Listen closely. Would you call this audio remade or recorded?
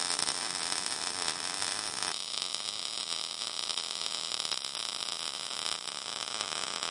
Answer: recorded